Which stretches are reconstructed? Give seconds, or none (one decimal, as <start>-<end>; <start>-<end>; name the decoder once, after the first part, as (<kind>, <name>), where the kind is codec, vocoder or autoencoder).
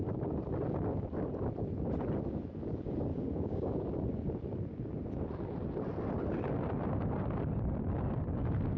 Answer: 3.1-3.8 (codec, DAC)